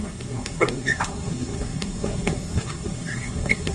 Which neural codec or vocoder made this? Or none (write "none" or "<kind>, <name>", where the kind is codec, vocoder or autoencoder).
codec, SNAC